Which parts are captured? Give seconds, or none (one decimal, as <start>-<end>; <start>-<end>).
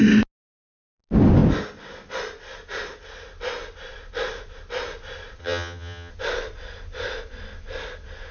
0.0-5.4; 6.1-8.3